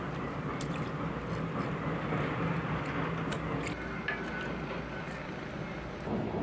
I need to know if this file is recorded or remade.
recorded